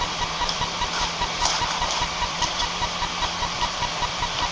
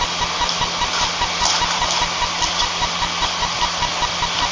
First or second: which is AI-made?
first